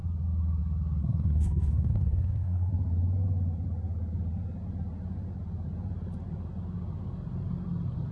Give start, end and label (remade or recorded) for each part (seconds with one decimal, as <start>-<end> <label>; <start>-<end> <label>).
0.0-1.0 recorded; 1.0-2.7 remade; 2.7-8.1 recorded